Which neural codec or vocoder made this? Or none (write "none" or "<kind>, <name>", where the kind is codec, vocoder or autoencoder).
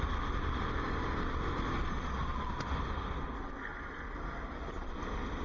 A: none